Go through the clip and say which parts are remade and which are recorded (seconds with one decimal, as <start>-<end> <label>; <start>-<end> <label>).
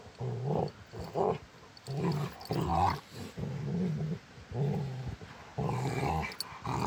0.0-6.9 recorded